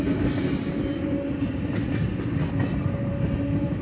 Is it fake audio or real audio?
real